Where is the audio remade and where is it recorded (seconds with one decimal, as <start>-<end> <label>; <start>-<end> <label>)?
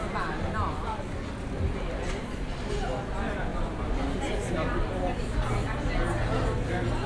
0.0-7.1 recorded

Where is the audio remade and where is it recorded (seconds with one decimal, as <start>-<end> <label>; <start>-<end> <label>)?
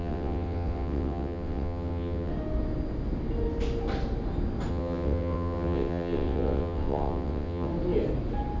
0.0-2.3 remade; 2.3-4.7 recorded; 4.7-7.7 remade; 7.7-8.6 recorded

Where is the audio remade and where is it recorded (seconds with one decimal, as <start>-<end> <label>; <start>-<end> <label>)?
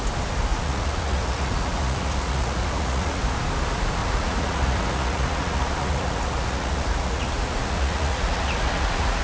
0.0-0.5 recorded; 0.5-3.2 remade; 3.2-4.0 recorded; 4.0-9.2 remade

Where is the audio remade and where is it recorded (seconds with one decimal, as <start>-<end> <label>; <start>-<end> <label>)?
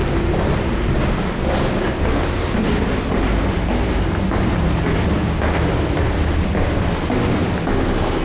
0.0-8.2 recorded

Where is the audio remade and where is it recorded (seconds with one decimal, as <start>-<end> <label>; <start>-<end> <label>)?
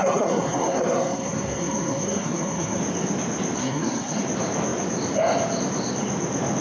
0.0-2.8 remade; 2.8-3.6 recorded; 3.6-4.2 remade; 4.2-6.6 recorded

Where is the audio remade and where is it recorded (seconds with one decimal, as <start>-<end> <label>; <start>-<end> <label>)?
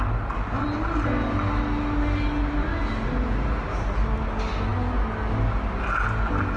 0.0-6.6 recorded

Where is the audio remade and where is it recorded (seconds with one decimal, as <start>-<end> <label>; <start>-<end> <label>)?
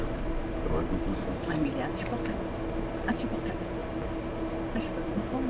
0.0-1.9 remade; 1.9-3.1 recorded; 3.1-3.8 remade; 3.8-4.7 recorded; 4.7-5.5 remade